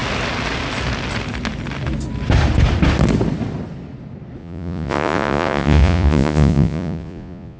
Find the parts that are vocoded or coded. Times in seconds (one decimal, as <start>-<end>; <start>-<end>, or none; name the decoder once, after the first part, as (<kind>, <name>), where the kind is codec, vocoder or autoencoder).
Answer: 4.4-7.6 (vocoder, Vocos)